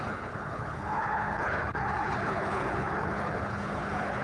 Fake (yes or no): yes